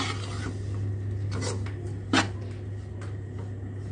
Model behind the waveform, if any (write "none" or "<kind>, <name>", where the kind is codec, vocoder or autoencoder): none